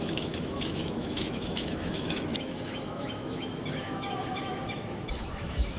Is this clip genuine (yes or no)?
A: no